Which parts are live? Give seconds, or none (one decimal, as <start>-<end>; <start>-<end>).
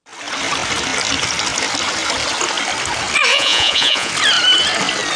0.0-3.3; 4.1-5.2